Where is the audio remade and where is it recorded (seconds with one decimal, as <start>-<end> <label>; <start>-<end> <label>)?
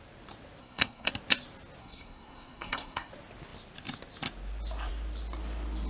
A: 0.0-0.6 recorded; 0.6-1.1 remade; 1.1-1.8 recorded; 1.8-3.1 remade; 3.1-5.9 recorded